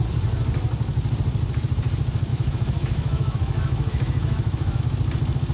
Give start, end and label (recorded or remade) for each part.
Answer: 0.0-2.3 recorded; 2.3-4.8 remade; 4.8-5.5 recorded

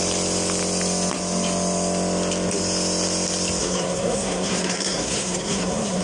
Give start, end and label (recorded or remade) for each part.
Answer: 0.0-3.6 recorded; 3.6-6.0 remade